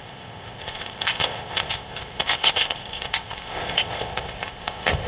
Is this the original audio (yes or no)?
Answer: no